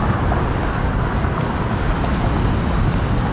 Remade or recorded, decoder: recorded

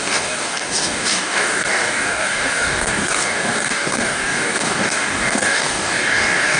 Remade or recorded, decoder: remade, codec, DAC